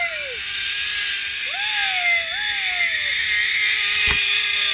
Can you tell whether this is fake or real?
real